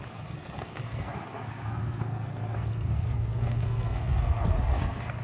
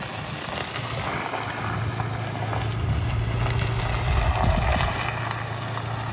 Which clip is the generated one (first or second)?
first